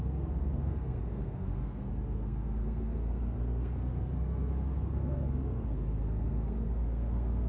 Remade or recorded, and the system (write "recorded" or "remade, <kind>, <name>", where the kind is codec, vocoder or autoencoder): remade, codec, SNAC